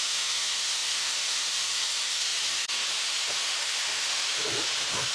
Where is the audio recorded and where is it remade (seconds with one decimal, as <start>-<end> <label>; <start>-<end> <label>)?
0.0-5.1 remade